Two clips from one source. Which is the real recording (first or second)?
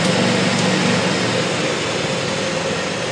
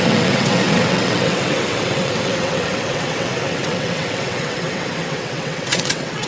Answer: first